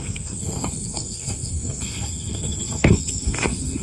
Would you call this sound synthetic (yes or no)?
yes